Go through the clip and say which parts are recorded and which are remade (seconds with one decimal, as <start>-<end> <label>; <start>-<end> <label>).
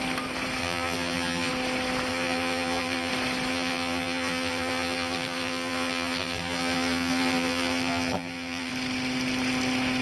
0.0-0.6 recorded; 0.6-1.5 remade; 1.5-2.1 recorded; 2.1-3.1 remade; 3.1-3.5 recorded; 3.5-8.7 remade; 8.7-10.0 recorded